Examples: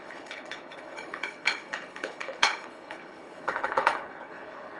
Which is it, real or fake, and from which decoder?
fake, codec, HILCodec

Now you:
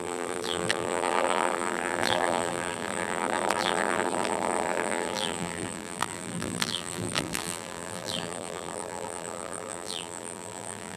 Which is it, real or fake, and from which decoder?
fake, vocoder, BigVGAN v2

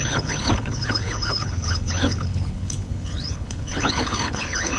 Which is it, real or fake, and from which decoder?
fake, codec, HILCodec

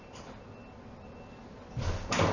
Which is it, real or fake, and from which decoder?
real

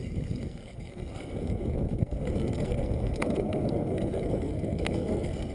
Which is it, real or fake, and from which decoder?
fake, codec, SNAC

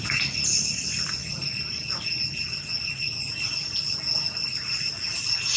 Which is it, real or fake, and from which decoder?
real